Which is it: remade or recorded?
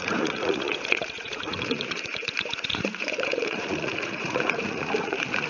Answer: remade